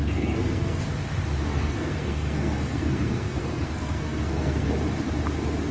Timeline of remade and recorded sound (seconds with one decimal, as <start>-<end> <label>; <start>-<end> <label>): 0.0-0.8 remade; 0.8-1.5 recorded; 1.5-4.7 remade; 4.7-5.7 recorded